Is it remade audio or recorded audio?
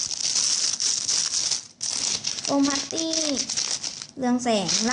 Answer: recorded